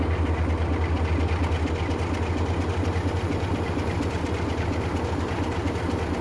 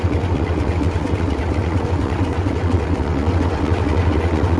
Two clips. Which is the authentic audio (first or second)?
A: first